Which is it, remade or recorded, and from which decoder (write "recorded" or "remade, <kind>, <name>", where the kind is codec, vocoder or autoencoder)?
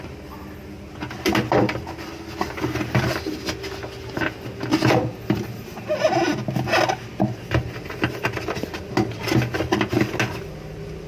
recorded